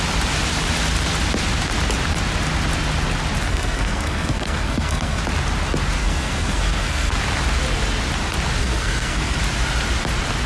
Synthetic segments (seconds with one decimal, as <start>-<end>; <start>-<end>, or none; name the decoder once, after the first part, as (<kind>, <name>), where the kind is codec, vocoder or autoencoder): 3.5-5.2 (codec, SNAC); 6.0-7.1; 8.6-9.4